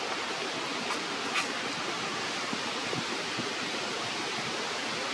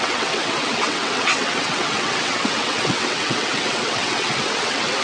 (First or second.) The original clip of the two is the first